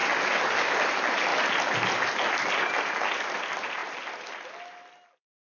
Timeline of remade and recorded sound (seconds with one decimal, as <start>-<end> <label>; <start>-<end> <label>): 0.0-5.5 recorded